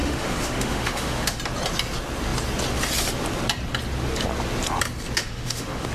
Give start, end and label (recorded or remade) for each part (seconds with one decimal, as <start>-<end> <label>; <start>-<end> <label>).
0.0-1.4 remade; 1.4-5.2 recorded; 5.2-5.9 remade